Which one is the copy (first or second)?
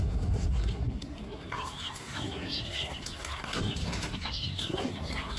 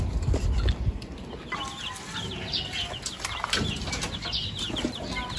first